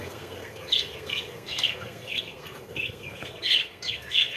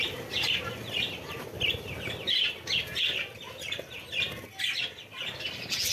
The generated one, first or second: first